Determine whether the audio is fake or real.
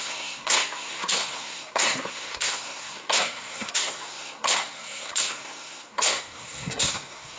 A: fake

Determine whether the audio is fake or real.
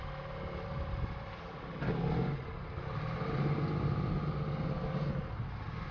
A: real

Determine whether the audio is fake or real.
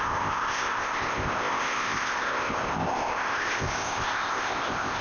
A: fake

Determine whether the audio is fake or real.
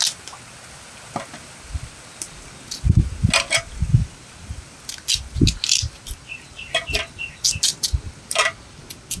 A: real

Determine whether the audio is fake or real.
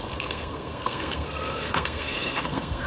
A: fake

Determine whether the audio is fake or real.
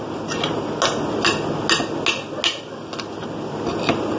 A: real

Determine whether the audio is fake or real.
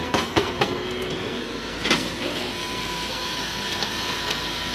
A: fake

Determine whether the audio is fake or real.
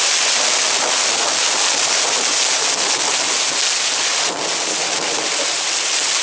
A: real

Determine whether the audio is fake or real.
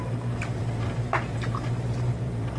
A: fake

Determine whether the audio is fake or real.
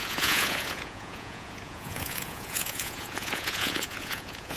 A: fake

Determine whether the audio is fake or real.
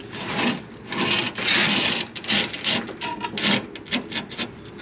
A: real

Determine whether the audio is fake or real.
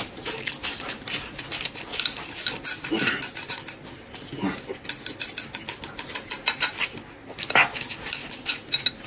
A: real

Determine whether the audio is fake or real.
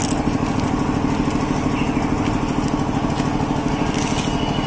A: real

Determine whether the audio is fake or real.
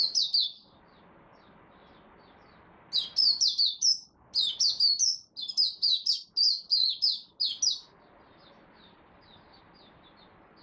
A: real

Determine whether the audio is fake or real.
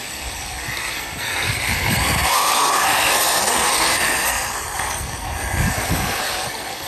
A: fake